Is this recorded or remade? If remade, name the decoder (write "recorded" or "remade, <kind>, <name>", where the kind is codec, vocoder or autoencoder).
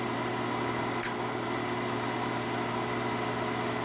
recorded